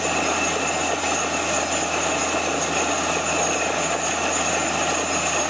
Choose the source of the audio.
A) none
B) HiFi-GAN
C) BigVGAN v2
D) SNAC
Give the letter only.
A